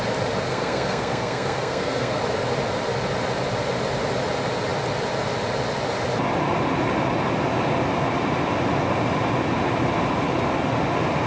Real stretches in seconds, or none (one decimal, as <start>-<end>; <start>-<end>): 0.0-0.5; 2.2-11.3